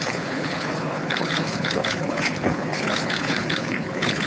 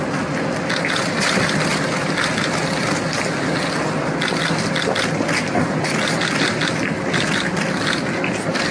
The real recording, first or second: second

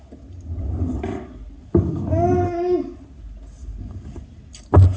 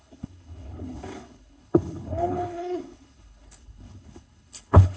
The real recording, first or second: first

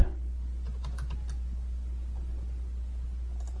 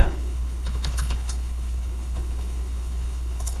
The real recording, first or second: first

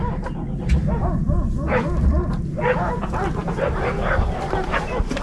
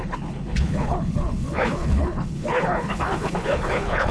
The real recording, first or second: first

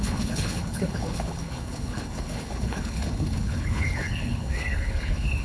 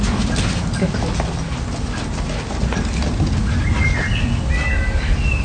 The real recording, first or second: second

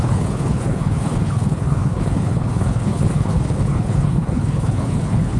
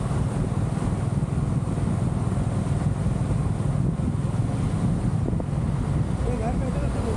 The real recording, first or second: second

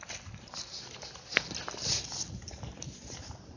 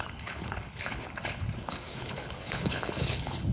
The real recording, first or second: first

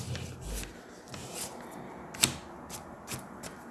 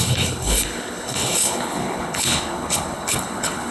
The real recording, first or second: first